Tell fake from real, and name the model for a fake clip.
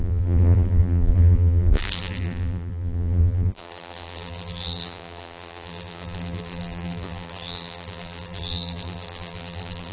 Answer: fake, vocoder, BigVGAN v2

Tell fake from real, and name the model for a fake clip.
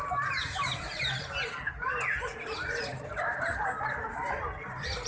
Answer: real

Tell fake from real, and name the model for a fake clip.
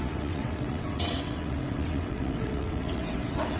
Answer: fake, vocoder, WaveNeXt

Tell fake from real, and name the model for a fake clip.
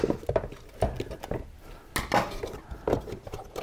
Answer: real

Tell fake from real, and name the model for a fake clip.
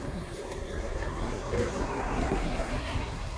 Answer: fake, codec, SNAC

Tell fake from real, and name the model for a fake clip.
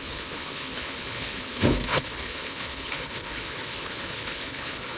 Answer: fake, codec, HILCodec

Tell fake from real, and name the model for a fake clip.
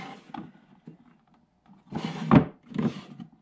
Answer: real